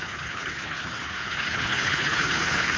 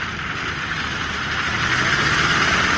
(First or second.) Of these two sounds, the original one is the second